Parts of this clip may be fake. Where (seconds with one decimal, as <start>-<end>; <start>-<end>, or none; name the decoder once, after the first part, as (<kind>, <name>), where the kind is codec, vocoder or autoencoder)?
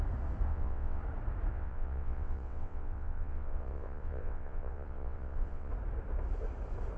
0.5-1.0 (vocoder, WaveNeXt); 1.5-5.7